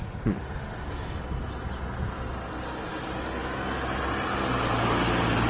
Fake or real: real